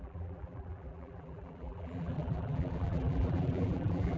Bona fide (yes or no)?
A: no